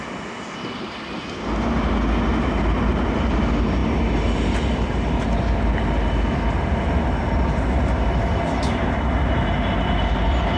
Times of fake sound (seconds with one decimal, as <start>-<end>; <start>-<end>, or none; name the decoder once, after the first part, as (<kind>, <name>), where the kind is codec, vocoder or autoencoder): none